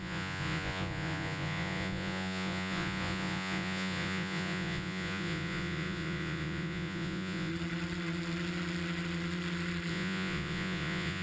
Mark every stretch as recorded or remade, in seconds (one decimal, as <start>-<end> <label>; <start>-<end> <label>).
0.0-7.5 remade; 7.5-9.9 recorded; 9.9-11.2 remade